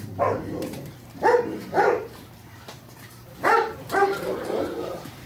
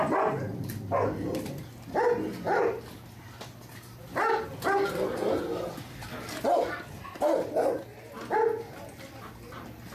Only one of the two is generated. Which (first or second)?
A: first